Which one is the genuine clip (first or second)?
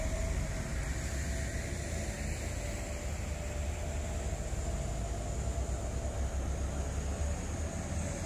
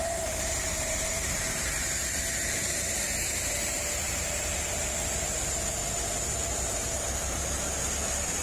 first